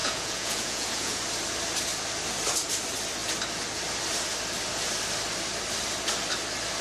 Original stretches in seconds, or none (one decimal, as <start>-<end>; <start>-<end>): 1.2-6.8